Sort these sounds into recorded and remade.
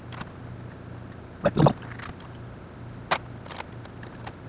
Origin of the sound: recorded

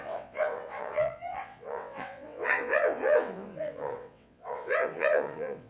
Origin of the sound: remade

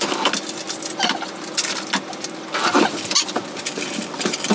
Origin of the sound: recorded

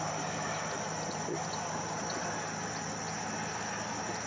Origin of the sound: recorded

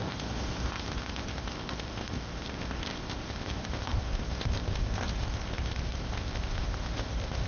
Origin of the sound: remade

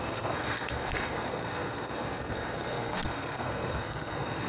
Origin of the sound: remade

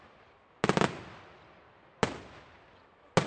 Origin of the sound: recorded